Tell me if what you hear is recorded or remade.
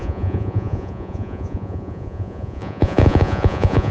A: remade